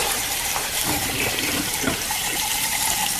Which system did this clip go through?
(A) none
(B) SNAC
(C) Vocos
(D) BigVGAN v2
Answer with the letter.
D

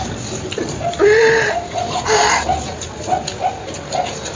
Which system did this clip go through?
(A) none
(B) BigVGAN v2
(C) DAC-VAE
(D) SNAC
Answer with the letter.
A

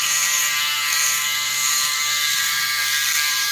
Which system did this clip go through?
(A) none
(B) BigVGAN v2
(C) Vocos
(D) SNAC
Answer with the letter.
D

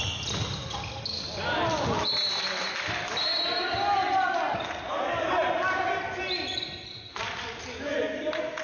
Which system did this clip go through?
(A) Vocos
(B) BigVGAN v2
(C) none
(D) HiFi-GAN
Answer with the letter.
C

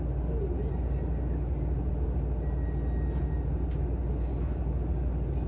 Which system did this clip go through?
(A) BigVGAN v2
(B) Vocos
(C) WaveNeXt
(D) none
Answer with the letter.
D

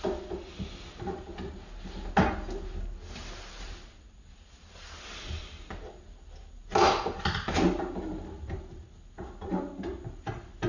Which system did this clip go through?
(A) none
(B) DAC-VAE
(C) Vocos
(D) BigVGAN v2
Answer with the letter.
A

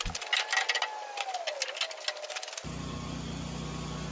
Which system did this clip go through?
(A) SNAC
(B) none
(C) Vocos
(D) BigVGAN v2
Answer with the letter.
B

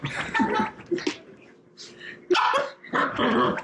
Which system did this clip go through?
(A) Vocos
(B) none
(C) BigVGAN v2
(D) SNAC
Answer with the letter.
B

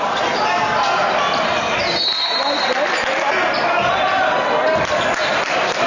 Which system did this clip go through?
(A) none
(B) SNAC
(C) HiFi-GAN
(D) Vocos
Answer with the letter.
A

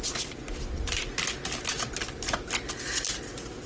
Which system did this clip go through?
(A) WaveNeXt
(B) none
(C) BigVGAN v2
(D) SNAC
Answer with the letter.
B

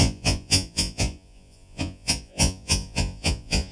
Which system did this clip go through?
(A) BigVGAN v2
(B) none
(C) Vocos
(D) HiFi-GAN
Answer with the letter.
C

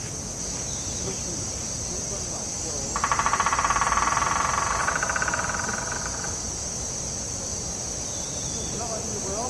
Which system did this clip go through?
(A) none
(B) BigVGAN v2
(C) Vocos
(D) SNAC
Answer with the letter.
A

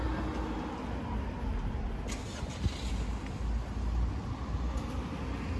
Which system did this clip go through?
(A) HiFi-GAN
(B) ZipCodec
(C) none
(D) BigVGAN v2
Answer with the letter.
C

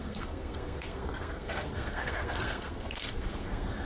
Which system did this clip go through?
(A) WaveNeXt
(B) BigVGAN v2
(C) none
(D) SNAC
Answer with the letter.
D